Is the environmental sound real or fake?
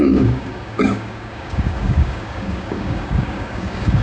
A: fake